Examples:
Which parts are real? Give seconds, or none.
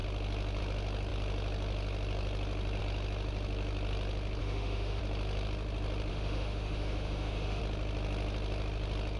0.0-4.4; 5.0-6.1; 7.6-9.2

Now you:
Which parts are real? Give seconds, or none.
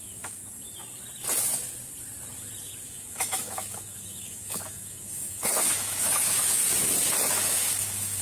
0.4-2.8; 6.6-7.3